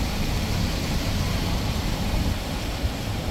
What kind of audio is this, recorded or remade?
remade